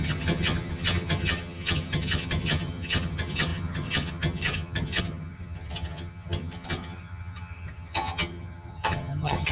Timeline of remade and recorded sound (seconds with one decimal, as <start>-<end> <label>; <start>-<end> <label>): 0.0-9.5 remade